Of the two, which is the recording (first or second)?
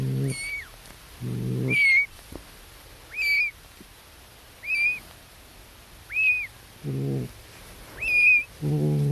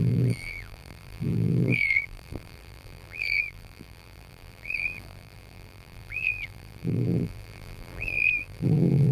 first